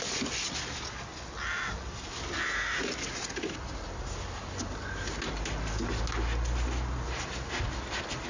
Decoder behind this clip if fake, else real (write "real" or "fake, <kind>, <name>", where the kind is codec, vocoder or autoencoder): real